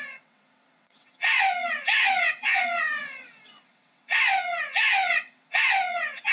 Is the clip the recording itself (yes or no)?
no